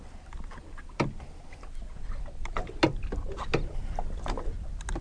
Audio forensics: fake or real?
real